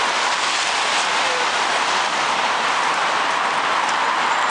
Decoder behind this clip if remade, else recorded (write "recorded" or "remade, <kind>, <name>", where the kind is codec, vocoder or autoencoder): recorded